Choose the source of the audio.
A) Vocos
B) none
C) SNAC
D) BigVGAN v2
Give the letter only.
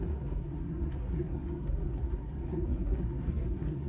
C